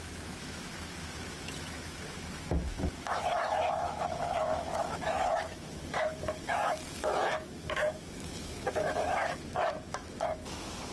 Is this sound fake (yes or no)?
yes